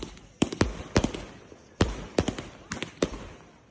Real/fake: real